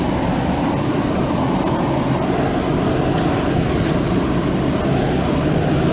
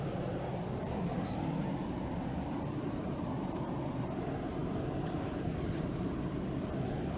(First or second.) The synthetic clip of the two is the second